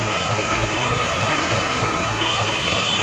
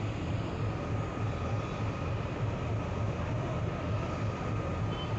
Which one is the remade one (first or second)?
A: first